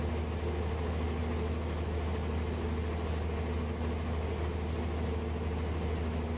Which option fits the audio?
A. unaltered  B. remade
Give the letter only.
A